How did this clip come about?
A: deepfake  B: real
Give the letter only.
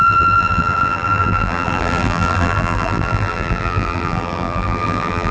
A